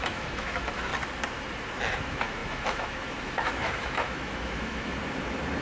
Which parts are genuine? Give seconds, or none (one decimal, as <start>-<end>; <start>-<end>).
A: 0.9-1.8; 5.0-5.6